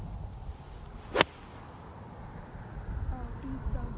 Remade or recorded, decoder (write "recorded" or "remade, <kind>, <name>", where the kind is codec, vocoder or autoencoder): recorded